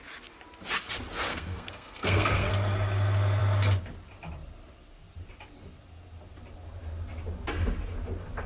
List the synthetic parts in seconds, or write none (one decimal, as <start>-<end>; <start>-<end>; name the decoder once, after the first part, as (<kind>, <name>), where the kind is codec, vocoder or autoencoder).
1.3-2.5 (codec, SNAC)